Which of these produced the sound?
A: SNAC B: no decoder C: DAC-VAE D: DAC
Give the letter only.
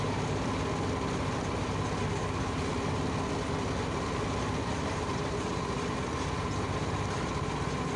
B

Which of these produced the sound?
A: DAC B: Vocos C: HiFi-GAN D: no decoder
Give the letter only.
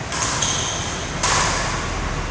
D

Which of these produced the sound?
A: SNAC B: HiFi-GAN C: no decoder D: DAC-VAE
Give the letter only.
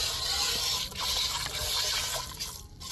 C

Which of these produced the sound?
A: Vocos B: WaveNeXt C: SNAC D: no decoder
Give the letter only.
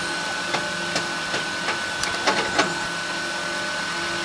D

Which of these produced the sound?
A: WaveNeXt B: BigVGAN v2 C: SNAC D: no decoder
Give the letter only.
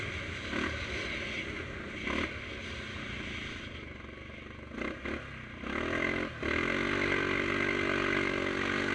D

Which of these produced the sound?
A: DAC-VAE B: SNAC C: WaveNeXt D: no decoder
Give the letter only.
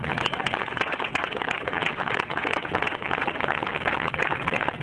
C